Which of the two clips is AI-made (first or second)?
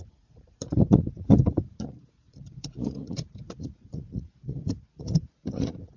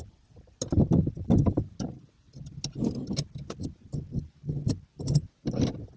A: first